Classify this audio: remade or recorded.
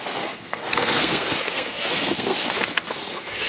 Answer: remade